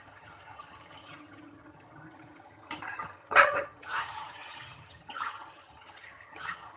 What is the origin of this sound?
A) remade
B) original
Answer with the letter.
A